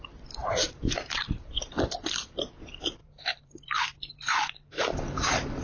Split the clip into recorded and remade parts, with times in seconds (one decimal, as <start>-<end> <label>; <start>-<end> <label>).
0.0-0.4 recorded; 0.4-2.0 remade; 2.0-3.0 recorded; 3.0-5.6 remade